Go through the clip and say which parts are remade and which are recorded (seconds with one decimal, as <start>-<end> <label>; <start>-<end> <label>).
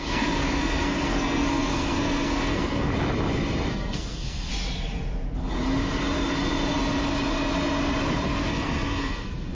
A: 0.0-2.9 remade; 2.9-3.7 recorded; 3.7-4.5 remade; 4.5-8.5 recorded; 8.5-9.5 remade